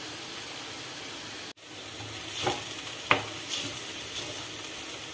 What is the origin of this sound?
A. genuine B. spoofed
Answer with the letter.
A